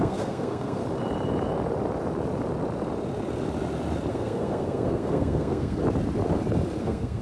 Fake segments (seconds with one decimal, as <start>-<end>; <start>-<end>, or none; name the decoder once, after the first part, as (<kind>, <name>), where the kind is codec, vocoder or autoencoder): 0.0-0.8 (codec, SNAC); 4.1-5.8; 6.8-7.2